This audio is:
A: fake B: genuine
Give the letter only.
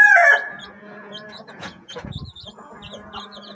A